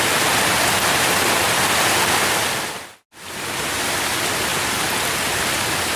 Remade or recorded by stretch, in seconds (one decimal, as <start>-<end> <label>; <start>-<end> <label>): 0.0-6.0 recorded